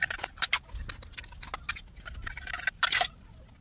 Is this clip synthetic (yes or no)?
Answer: no